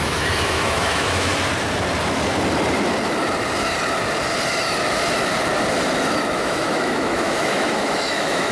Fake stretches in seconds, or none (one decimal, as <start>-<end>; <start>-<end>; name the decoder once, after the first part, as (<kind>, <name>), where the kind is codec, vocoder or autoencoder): 0.0-1.3 (autoencoder, DAC-VAE); 6.3-8.5